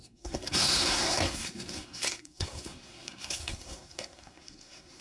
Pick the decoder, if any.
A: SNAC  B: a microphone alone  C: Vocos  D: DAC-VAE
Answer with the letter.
A